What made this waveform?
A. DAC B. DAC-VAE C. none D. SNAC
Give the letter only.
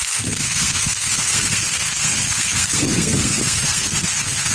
D